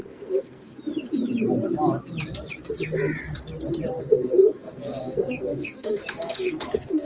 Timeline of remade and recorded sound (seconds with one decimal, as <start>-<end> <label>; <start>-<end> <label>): 0.0-0.7 remade; 0.7-4.0 recorded; 4.0-7.0 remade